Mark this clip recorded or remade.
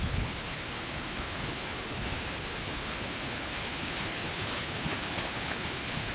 remade